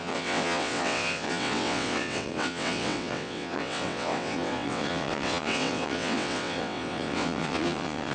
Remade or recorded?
remade